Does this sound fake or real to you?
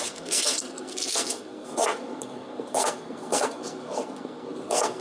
fake